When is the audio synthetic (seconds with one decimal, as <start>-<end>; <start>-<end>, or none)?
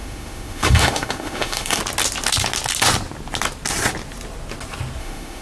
0.0-1.8; 5.0-5.4